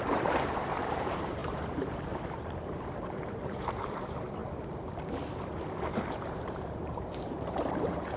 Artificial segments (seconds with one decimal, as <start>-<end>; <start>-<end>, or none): 0.0-4.4; 5.9-8.2

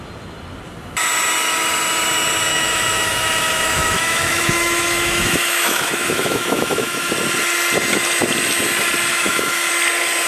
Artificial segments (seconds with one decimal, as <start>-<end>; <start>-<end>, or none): 2.5-7.1; 9.1-9.7

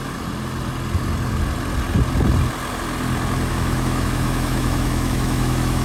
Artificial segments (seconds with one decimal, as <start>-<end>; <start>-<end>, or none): 3.5-5.8

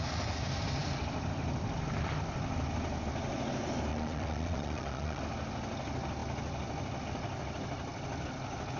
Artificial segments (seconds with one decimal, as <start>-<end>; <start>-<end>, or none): 3.9-5.2